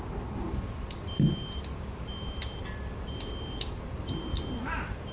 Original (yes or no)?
yes